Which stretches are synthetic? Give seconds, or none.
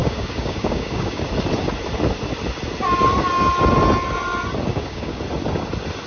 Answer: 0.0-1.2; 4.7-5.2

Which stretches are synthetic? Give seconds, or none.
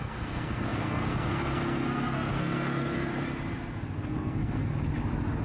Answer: 0.0-3.1; 4.0-4.7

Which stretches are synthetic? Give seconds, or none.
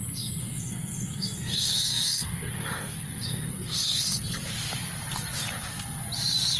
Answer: 0.4-4.4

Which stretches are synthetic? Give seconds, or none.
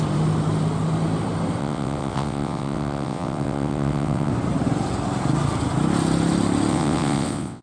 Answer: 1.6-4.3; 6.7-7.6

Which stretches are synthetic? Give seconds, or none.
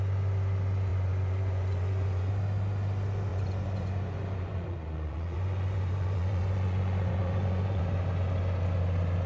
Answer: 0.9-2.3; 3.3-7.8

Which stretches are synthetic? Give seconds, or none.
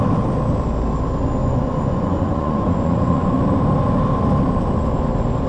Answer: 1.4-3.4